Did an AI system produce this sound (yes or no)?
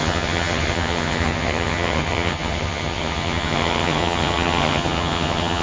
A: yes